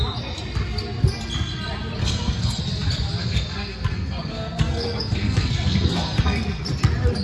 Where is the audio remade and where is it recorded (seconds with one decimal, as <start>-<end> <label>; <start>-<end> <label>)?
0.0-2.0 recorded; 2.0-2.6 remade; 2.6-3.2 recorded; 3.2-6.6 remade; 6.6-7.2 recorded